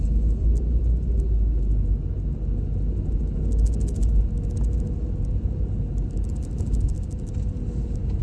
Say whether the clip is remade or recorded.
recorded